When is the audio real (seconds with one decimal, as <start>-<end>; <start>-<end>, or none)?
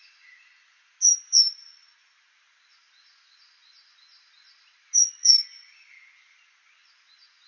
0.9-1.5; 4.1-5.0